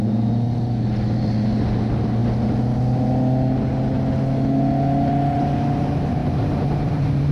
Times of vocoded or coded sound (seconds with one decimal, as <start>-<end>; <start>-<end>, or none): 6.2-7.3